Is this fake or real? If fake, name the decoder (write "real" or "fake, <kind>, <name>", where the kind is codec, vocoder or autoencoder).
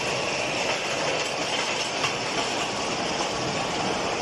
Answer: real